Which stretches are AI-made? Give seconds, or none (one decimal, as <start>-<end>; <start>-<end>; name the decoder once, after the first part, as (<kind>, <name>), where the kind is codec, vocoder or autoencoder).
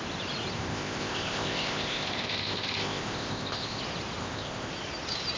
0.6-3.8 (codec, ZipCodec); 4.2-4.7